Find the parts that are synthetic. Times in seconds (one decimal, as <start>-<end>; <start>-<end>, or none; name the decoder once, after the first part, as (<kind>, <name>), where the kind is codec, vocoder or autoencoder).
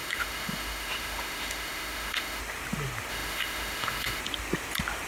0.0-2.4 (autoencoder, DAC-VAE); 3.1-4.2